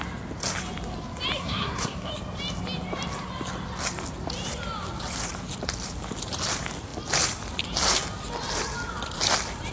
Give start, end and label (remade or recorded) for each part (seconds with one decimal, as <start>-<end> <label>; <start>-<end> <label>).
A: 0.0-1.4 recorded; 1.4-2.1 remade; 2.1-9.7 recorded